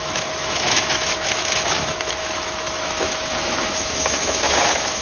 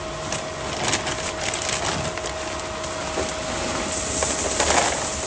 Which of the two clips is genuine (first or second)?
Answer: second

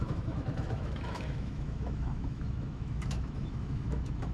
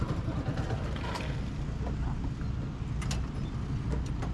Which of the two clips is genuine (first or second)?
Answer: second